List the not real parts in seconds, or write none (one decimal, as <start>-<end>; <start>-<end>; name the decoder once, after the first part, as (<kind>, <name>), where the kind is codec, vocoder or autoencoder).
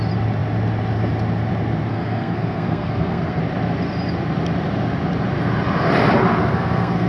1.9-3.4 (codec, SNAC); 6.4-7.1